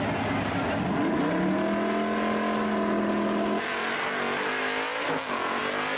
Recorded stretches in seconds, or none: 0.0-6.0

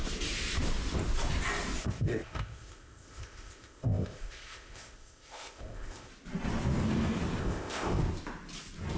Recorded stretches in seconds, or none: 0.0-1.8; 6.1-7.4; 8.0-9.0

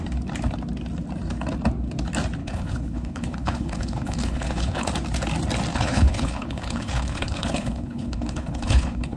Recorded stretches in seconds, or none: 0.0-2.4; 4.9-5.7

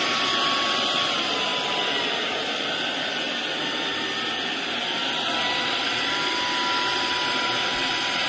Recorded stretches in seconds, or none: 0.0-8.3

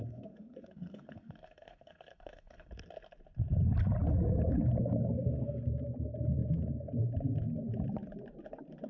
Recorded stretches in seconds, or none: 2.7-8.9

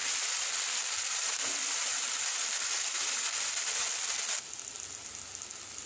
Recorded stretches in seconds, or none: 3.5-5.9